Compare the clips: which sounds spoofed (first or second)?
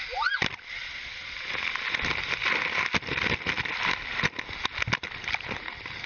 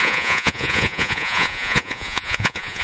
second